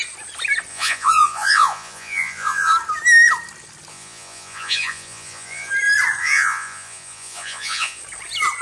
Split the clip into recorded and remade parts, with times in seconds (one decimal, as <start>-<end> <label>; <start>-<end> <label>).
0.0-0.7 recorded; 0.7-2.7 remade; 2.7-3.9 recorded; 3.9-5.7 remade; 5.7-6.2 recorded; 6.2-8.0 remade; 8.0-8.6 recorded